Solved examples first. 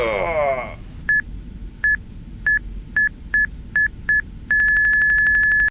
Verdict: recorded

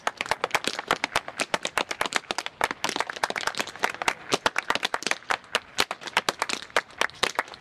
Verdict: recorded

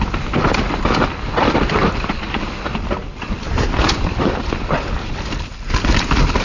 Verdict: recorded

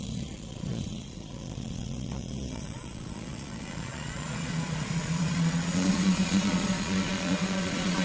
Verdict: remade